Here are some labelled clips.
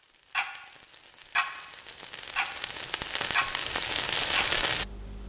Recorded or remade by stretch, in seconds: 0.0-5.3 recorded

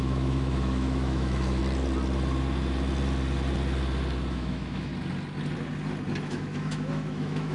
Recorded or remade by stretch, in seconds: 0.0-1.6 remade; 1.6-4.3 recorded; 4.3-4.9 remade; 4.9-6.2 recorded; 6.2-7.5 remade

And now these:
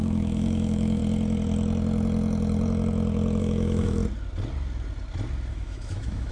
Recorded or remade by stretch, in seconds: 0.0-1.0 remade; 1.0-3.4 recorded; 3.4-4.0 remade; 4.0-5.5 recorded; 5.5-6.3 remade

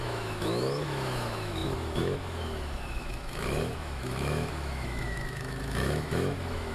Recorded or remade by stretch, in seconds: 0.0-6.7 remade